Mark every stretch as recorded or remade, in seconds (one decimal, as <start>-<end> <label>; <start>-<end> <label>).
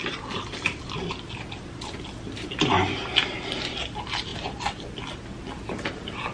0.0-6.3 recorded